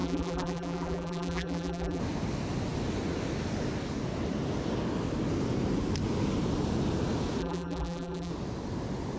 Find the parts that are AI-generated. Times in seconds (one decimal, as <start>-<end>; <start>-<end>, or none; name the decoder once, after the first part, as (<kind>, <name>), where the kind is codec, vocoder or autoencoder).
0.0-2.0 (vocoder, BigVGAN v2); 7.4-8.3